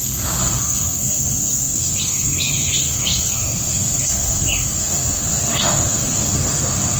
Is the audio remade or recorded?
remade